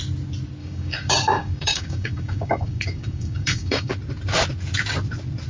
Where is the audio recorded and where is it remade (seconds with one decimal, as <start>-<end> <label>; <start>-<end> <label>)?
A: 0.0-0.6 recorded; 0.6-3.9 remade; 3.9-5.5 recorded